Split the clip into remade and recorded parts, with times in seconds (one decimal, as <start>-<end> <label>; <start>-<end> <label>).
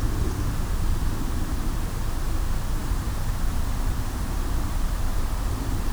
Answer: 0.0-2.8 recorded; 2.8-5.9 remade